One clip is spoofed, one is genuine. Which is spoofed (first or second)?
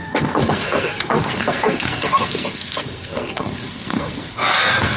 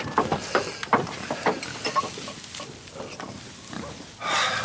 first